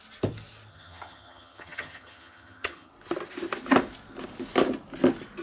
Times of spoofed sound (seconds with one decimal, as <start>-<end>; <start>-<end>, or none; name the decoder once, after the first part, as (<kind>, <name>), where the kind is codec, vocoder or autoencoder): 0.7-2.9 (vocoder, HiFi-GAN)